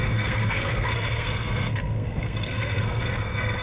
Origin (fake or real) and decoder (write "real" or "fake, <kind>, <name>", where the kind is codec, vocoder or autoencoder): fake, codec, SNAC